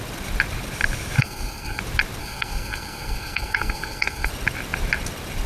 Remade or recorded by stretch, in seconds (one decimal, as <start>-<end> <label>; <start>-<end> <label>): 0.0-1.2 recorded; 1.2-1.8 remade; 1.8-2.2 recorded; 2.2-4.3 remade; 4.3-5.5 recorded